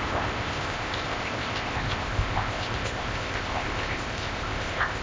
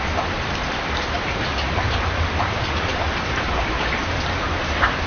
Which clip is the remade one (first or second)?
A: first